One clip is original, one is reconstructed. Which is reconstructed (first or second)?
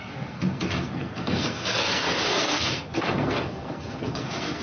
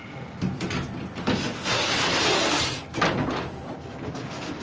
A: first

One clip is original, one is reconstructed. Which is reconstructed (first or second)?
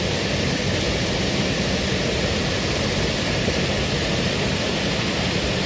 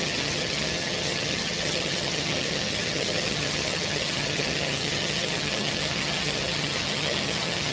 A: second